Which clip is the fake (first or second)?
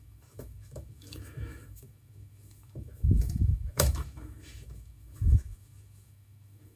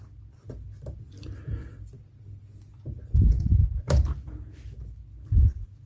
first